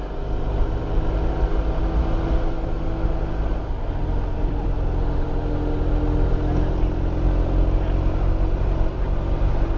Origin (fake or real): real